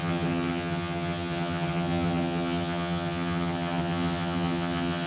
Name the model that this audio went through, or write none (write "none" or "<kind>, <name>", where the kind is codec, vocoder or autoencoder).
vocoder, HiFi-GAN